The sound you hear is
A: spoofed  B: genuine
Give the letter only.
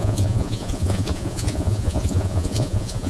A